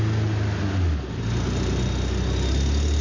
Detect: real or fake real